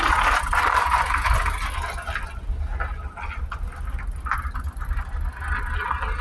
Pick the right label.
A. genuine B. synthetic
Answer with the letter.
A